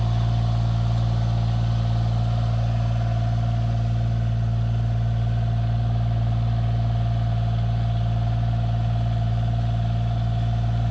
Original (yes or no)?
yes